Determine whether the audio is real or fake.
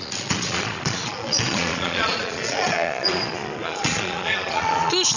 fake